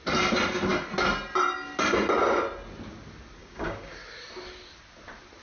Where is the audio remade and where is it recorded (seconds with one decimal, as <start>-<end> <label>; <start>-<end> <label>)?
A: 0.0-3.4 recorded; 3.4-3.9 remade; 3.9-5.4 recorded